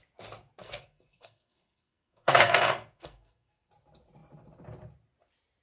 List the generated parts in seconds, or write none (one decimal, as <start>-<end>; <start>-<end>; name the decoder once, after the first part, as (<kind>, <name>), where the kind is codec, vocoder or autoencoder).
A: 0.6-3.7 (codec, SNAC)